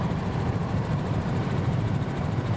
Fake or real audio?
fake